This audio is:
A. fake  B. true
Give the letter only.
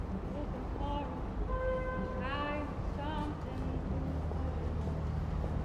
B